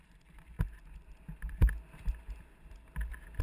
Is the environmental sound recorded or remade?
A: recorded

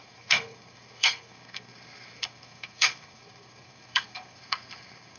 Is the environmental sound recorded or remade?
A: remade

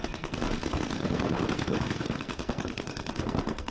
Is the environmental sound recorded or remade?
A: remade